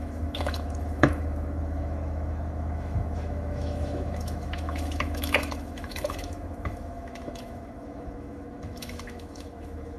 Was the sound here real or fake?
fake